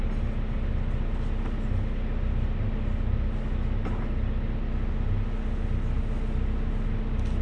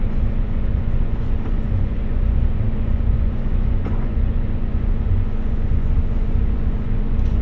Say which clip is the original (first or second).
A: first